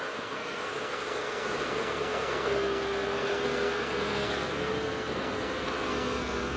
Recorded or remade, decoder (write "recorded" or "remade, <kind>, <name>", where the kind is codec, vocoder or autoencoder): remade, codec, SNAC